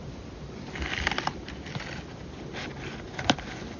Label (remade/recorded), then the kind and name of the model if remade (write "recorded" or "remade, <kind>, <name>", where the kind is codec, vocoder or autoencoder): recorded